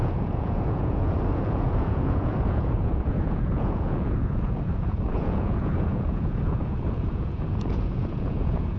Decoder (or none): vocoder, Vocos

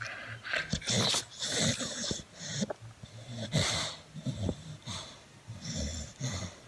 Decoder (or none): none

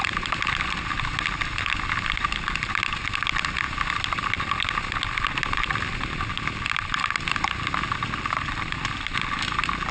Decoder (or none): none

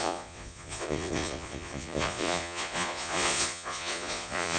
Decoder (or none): vocoder, Vocos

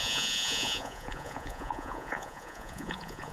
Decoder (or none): vocoder, Vocos